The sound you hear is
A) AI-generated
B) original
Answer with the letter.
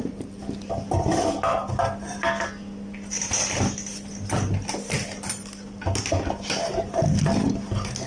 B